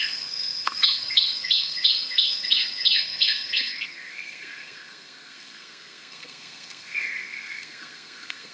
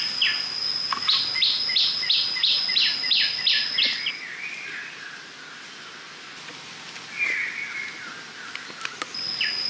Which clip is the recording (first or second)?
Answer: second